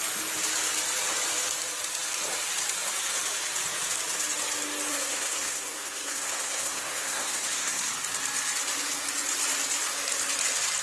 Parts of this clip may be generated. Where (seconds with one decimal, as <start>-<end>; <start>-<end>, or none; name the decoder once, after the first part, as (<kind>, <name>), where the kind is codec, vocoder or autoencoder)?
4.9-7.9 (codec, SNAC)